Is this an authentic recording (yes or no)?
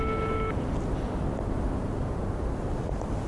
yes